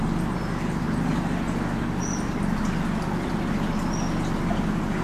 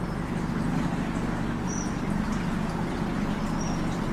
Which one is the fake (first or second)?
second